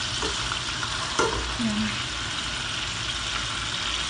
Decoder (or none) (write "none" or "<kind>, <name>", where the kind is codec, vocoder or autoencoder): none